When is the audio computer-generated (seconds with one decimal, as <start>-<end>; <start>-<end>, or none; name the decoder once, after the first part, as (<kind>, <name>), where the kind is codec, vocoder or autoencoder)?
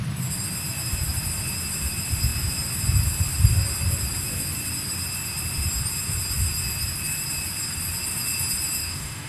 8.8-9.3 (autoencoder, DAC-VAE)